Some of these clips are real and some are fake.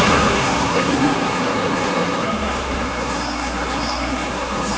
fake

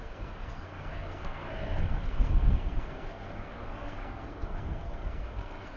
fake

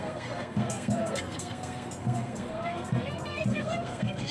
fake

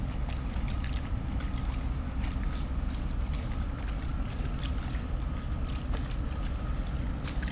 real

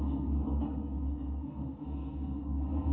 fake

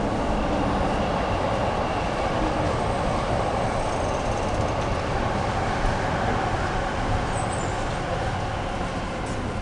real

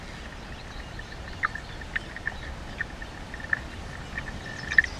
real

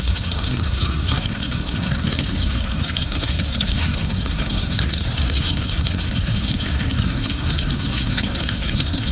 fake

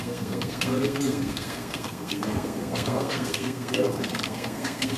fake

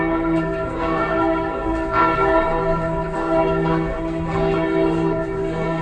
fake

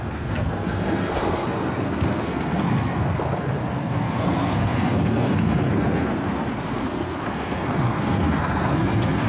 fake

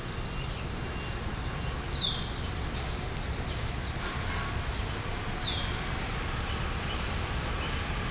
real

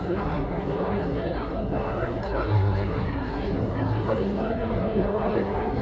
fake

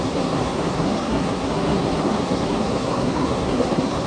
fake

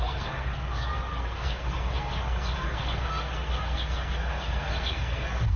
fake